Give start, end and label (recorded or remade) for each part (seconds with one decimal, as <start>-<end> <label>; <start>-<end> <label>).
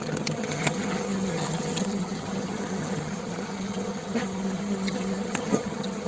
0.0-6.1 remade